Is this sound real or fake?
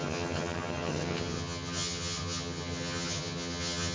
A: fake